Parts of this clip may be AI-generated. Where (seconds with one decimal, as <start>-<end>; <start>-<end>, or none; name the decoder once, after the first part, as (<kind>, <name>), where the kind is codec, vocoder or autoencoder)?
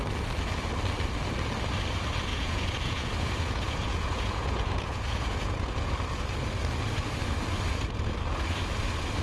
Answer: 2.3-5.9 (vocoder, Vocos)